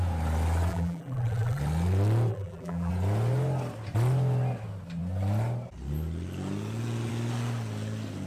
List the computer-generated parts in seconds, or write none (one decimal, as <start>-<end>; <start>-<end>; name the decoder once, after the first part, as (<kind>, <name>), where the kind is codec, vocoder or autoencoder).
0.7-1.6 (vocoder, BigVGAN v2); 2.3-2.9